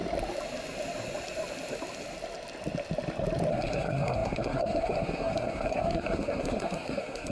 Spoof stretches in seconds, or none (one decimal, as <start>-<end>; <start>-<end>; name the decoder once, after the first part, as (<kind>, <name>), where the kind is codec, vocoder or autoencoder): 3.5-7.3 (codec, SNAC)